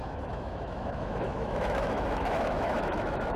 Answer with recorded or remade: remade